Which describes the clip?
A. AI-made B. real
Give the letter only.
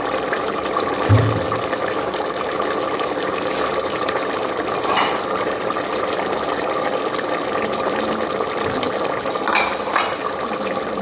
B